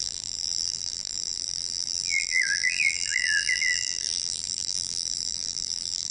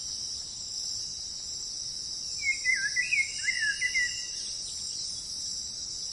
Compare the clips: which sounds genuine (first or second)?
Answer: second